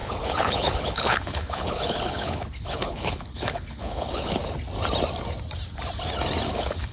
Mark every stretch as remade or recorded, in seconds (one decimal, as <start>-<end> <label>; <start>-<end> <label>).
0.0-4.4 remade; 4.4-6.5 recorded; 6.5-6.9 remade